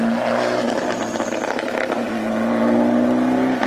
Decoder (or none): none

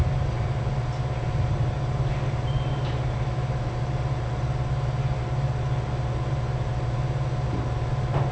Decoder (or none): none